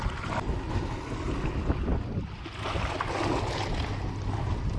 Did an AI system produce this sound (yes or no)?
no